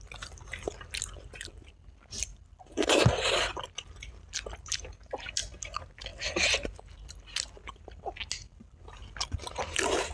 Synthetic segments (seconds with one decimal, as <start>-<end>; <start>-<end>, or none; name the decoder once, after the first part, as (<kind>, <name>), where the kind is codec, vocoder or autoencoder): none